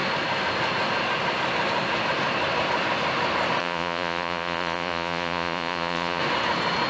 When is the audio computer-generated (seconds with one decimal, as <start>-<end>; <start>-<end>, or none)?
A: 3.6-6.2